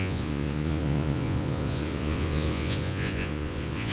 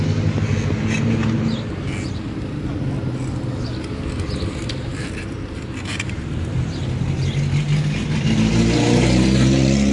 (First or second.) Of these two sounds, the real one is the second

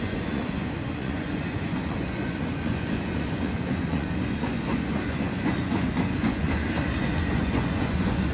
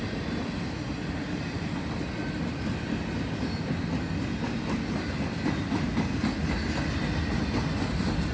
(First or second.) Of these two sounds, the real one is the second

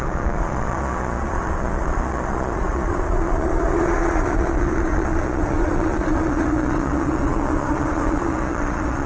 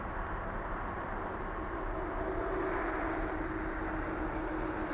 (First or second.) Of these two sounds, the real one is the second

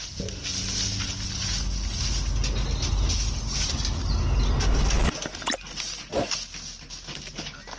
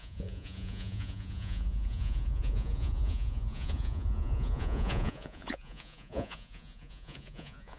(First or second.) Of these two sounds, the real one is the first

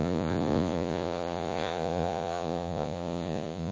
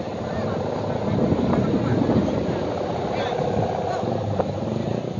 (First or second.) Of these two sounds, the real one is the second